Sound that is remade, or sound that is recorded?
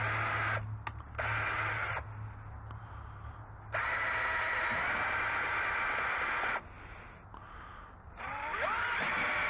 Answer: recorded